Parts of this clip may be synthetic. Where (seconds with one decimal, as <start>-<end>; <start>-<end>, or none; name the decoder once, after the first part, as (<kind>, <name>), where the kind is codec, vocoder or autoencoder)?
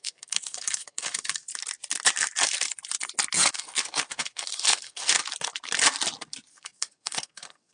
0.0-1.5 (codec, SNAC); 3.5-5.2; 6.5-7.7